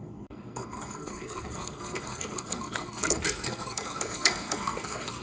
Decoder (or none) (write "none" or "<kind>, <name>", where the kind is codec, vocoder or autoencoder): codec, SNAC